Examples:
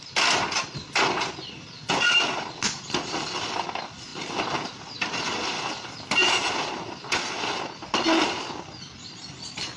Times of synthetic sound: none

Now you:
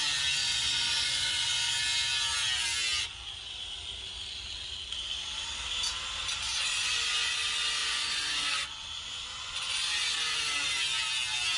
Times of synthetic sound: 0.4-1.7 (vocoder, Vocos); 6.5-7.3; 7.8-9.9

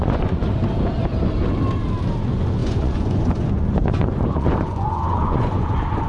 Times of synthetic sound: 0.0-0.4 (vocoder, Vocos); 2.2-6.1

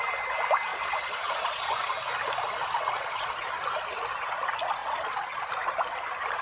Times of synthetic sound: 0.7-1.9 (vocoder, Vocos); 2.6-3.5; 4.8-5.5

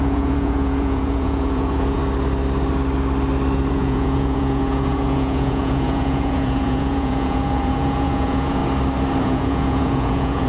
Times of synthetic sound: 0.0-2.0 (vocoder, Vocos); 3.7-8.6; 9.2-10.5

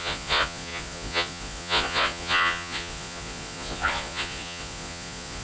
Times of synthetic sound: 0.0-5.4 (vocoder, Vocos)